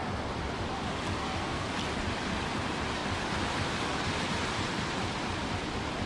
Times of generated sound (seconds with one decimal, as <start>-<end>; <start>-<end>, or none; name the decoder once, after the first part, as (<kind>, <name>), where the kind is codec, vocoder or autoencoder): 1.2-1.7 (codec, SNAC)